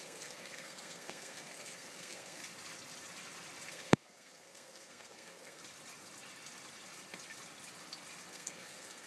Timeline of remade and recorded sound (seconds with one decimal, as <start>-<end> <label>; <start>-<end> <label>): 0.0-2.4 remade; 2.4-3.7 recorded; 3.7-5.6 remade; 5.6-8.3 recorded; 8.3-9.1 remade